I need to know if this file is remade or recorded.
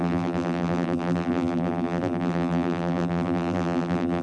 remade